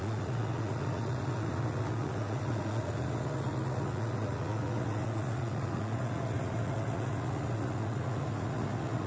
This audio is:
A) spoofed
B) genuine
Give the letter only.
A